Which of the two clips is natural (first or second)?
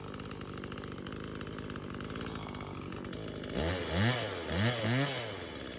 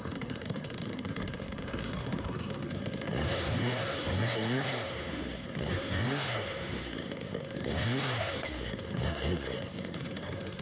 first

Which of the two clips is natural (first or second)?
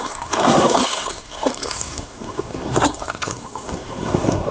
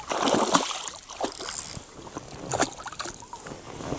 second